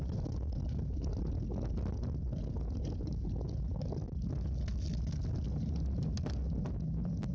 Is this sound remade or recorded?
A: recorded